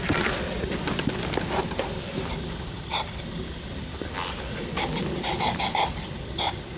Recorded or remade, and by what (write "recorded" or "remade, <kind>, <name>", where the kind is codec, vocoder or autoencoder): recorded